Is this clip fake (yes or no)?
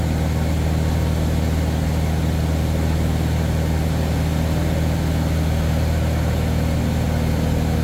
no